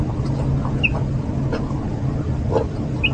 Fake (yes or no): no